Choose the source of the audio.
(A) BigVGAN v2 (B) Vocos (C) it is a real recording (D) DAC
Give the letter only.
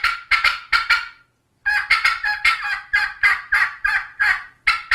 C